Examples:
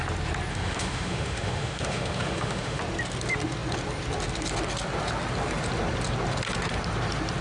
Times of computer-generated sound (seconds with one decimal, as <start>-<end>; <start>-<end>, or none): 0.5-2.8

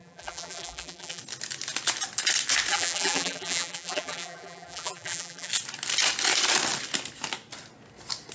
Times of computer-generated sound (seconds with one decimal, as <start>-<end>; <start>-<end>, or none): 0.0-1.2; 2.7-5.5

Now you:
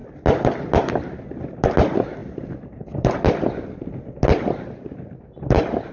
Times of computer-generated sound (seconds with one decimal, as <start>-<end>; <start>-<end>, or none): none

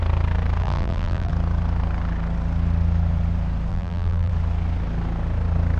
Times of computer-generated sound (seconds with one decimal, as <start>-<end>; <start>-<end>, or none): 0.6-1.3; 3.7-4.3

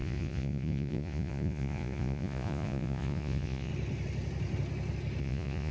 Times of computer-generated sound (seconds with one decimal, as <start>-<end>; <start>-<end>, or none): 0.0-3.7; 5.2-5.7